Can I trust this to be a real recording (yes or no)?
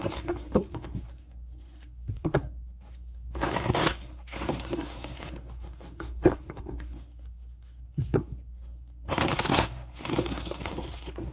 no